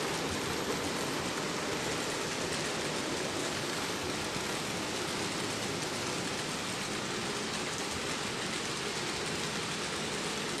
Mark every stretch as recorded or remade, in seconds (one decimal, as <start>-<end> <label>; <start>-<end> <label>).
0.0-3.4 recorded; 3.4-4.0 remade; 4.0-10.6 recorded